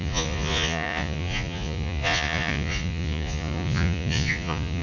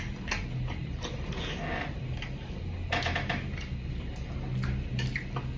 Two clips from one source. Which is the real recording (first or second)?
second